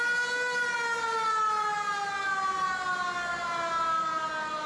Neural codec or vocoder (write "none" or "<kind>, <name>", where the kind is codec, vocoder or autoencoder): none